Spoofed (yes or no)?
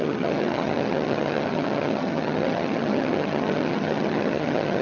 yes